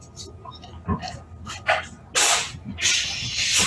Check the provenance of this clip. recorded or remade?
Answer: recorded